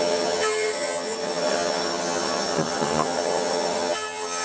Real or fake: fake